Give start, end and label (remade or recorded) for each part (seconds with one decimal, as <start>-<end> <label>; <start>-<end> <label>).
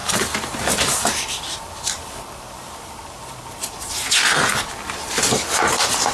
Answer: 0.0-3.7 remade; 3.7-6.1 recorded